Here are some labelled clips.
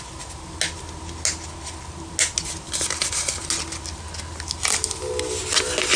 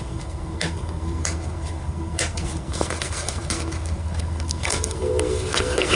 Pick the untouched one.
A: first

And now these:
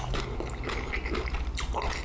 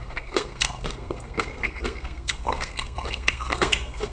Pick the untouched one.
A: first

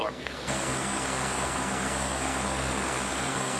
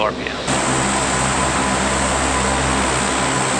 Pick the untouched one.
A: second